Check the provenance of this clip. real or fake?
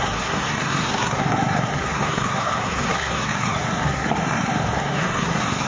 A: fake